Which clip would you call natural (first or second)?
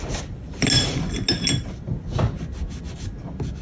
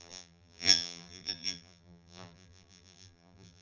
first